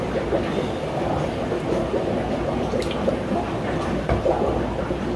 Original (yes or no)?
yes